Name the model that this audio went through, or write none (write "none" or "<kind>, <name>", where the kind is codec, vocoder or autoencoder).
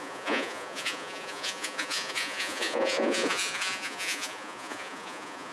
vocoder, Vocos